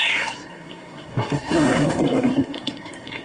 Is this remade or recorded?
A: remade